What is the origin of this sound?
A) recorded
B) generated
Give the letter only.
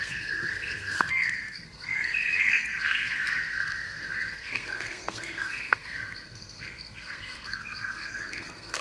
B